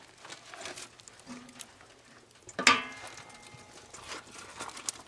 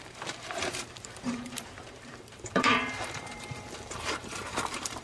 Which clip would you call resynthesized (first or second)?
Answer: second